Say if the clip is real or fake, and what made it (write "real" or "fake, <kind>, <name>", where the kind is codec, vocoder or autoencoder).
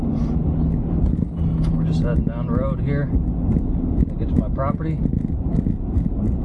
real